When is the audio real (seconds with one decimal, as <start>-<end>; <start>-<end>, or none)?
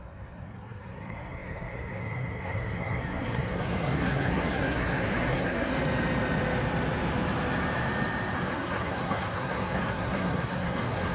5.7-8.5